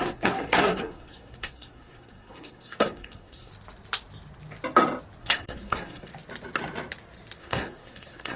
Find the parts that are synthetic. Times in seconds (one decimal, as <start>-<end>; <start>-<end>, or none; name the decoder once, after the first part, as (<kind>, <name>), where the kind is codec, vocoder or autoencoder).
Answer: 0.0-3.5 (codec, SNAC); 5.2-6.1; 7.4-8.4